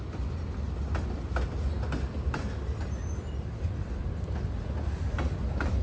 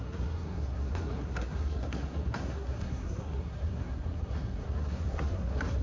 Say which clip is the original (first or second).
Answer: first